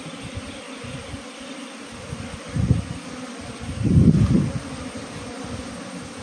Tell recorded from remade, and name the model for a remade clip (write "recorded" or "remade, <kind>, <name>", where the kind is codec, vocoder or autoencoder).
recorded